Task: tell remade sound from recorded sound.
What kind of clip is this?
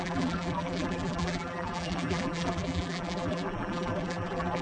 remade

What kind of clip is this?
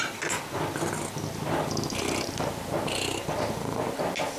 recorded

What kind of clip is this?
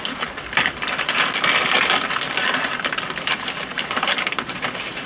recorded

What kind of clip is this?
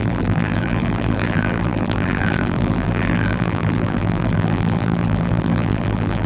remade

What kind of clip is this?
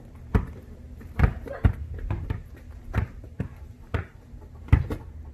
remade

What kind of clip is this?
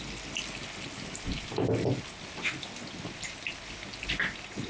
recorded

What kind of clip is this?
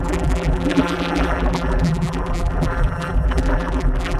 remade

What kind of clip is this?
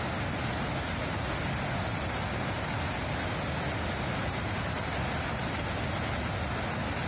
recorded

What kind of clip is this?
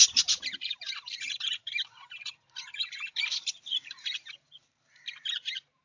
remade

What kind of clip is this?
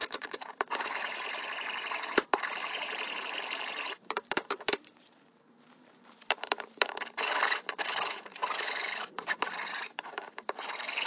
remade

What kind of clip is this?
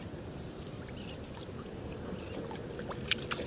recorded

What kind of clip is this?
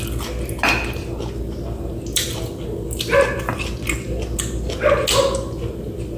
recorded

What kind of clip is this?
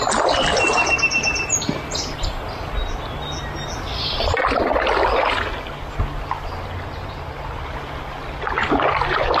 recorded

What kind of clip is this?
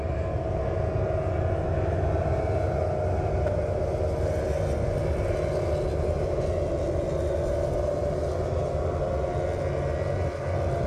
recorded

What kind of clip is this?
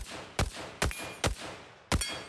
recorded